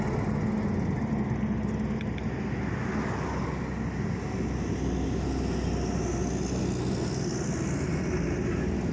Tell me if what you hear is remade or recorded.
recorded